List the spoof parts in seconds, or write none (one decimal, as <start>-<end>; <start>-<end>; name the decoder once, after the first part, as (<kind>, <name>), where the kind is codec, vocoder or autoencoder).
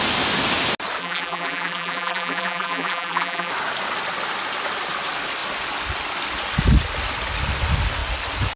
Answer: 1.0-3.5 (vocoder, BigVGAN v2)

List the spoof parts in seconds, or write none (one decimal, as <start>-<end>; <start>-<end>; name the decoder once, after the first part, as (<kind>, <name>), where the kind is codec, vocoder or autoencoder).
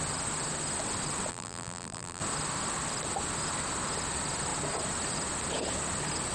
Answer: 1.3-2.2 (vocoder, BigVGAN v2)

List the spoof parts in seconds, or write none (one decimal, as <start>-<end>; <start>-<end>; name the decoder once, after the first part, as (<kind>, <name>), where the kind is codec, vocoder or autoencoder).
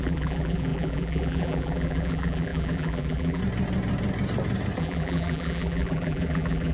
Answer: 0.0-3.4 (vocoder, BigVGAN v2); 4.8-6.7